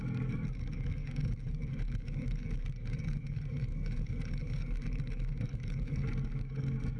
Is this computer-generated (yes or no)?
yes